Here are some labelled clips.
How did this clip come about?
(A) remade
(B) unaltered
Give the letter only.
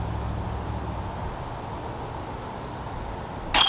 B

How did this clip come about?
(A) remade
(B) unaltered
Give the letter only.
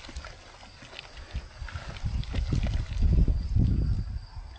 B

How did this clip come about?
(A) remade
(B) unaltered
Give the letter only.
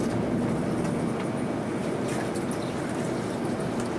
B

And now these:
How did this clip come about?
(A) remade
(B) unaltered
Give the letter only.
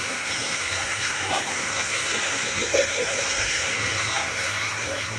A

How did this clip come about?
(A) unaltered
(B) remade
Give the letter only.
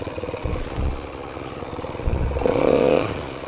B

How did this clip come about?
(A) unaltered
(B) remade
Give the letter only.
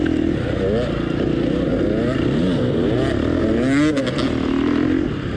A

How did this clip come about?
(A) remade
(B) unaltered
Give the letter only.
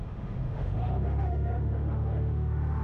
A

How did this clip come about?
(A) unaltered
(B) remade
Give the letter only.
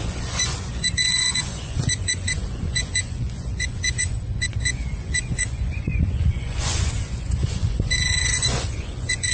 B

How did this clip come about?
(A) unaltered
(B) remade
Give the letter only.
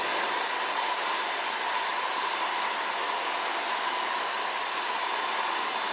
A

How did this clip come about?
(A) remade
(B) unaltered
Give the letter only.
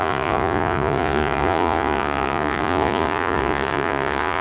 A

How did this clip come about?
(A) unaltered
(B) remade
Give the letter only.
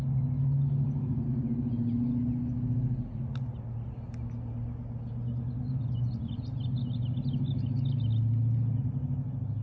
A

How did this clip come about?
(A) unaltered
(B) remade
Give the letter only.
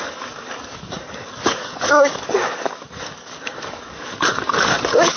B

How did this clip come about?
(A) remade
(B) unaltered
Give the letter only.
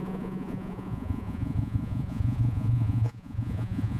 A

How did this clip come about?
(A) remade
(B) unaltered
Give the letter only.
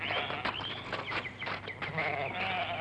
B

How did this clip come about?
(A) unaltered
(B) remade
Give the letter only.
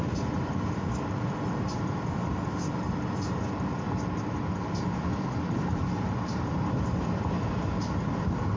A